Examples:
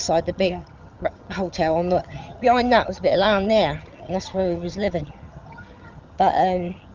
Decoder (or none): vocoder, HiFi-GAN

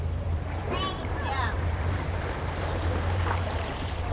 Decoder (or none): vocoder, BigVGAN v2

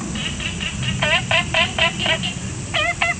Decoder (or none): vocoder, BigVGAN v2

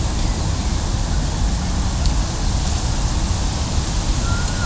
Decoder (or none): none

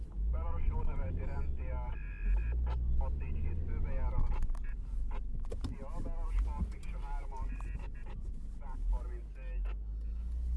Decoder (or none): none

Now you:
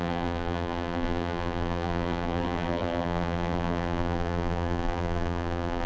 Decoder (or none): vocoder, BigVGAN v2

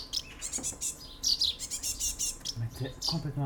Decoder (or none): none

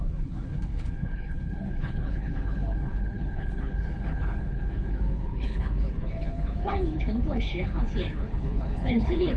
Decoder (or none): codec, HILCodec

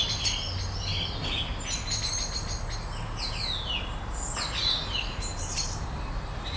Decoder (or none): none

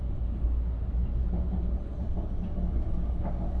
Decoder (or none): none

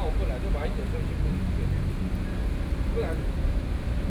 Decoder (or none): none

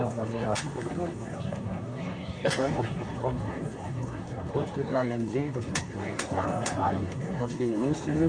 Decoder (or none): codec, SNAC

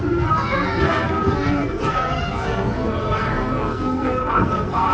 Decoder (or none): codec, SNAC